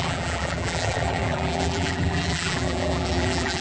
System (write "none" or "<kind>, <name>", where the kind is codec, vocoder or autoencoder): vocoder, BigVGAN v2